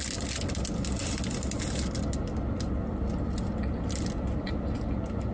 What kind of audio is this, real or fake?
real